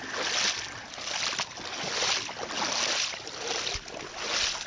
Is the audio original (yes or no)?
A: yes